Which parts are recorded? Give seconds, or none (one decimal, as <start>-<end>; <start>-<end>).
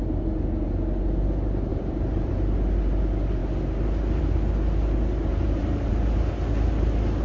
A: 0.0-1.7; 2.3-5.3; 5.9-7.2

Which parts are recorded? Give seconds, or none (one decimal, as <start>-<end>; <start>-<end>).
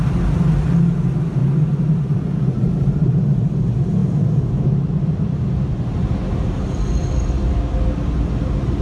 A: 0.0-1.4; 3.2-8.8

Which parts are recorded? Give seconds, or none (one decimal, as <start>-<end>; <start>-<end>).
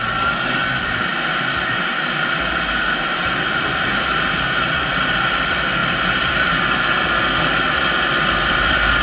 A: 0.0-9.0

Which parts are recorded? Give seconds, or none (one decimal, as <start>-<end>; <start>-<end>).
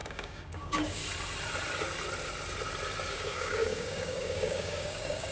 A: 1.0-3.1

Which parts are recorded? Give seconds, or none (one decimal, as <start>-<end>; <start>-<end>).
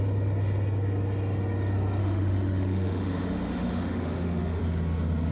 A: 0.0-2.0; 4.6-5.3